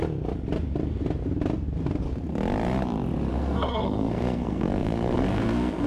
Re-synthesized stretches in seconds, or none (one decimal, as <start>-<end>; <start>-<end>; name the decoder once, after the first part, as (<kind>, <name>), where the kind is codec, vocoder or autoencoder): 3.3-5.9 (codec, SNAC)